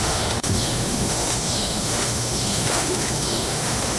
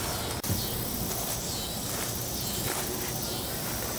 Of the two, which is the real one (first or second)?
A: second